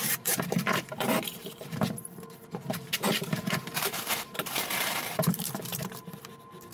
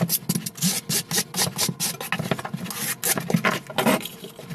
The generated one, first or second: first